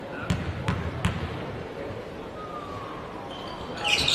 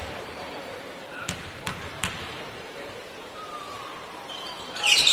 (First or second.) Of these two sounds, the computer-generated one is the second